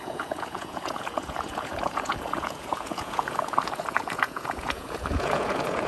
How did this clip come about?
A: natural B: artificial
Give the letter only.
B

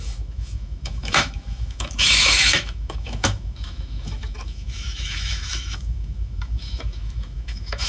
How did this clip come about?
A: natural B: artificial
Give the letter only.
B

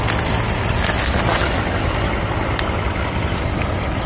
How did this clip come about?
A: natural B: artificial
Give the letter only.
A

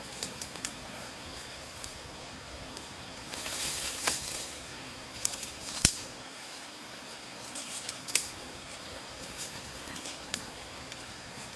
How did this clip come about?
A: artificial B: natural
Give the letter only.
A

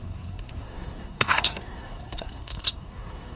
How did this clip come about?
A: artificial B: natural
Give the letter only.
A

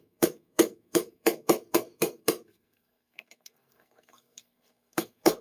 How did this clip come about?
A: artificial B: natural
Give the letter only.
A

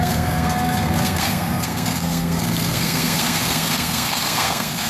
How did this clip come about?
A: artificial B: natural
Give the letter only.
A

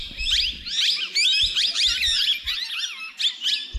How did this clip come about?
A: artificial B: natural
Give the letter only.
B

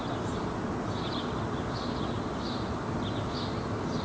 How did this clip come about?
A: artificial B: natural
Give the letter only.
B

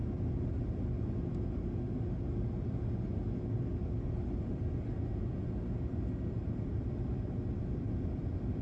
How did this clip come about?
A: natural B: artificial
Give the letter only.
A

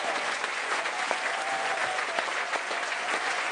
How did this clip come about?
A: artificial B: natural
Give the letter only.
A